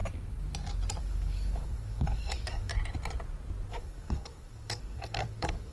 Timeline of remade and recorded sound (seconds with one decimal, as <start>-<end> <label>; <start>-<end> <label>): 0.0-1.0 recorded; 1.0-2.7 remade; 2.7-3.7 recorded; 3.7-5.7 remade